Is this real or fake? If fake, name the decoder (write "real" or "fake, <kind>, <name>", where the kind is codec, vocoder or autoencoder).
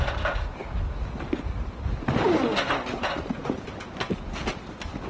real